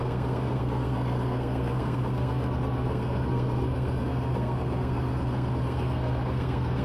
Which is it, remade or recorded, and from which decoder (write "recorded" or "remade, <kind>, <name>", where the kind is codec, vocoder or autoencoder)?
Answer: remade, codec, SNAC